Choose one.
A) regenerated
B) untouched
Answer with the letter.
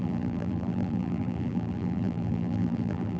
A